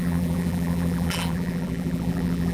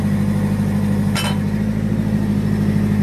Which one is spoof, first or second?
first